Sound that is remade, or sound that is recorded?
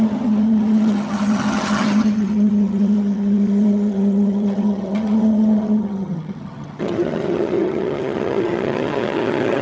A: remade